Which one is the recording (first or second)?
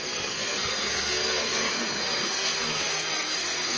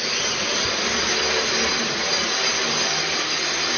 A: second